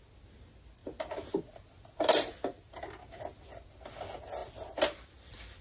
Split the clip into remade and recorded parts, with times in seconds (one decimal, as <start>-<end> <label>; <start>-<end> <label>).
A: 0.0-5.6 recorded